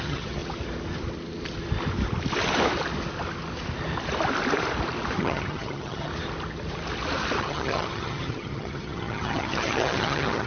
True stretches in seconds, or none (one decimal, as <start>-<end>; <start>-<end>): 0.4-5.2; 6.1-7.4